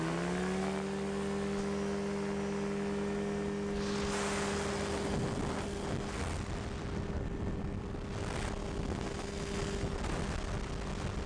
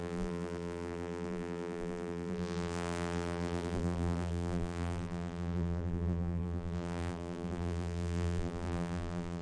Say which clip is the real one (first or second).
first